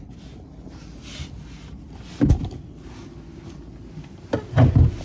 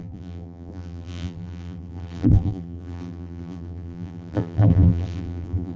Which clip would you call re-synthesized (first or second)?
second